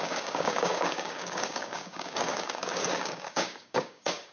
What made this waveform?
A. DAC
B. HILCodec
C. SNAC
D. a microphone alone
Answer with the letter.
A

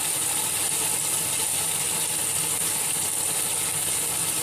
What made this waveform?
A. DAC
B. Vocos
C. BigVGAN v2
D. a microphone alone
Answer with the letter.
D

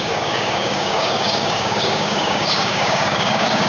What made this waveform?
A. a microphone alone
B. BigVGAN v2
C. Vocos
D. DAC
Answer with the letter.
D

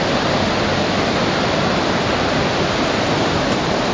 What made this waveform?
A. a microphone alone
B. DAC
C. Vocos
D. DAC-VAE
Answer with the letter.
A